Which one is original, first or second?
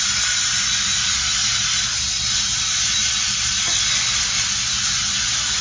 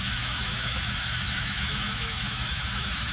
first